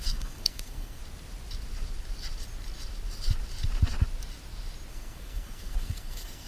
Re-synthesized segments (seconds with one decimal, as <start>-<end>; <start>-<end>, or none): 0.0-1.0; 4.9-6.5